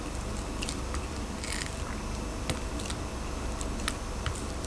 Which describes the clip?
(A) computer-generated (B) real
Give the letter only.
A